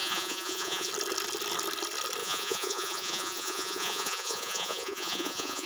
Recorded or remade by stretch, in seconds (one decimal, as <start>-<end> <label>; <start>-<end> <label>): 0.0-0.9 remade; 0.9-2.2 recorded; 2.2-5.7 remade